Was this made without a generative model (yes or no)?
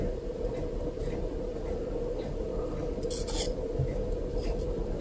yes